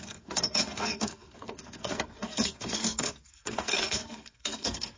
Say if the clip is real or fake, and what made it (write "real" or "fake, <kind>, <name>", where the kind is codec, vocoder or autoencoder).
fake, codec, SNAC